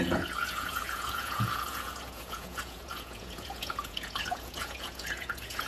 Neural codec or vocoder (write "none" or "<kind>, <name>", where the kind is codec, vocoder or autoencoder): vocoder, Vocos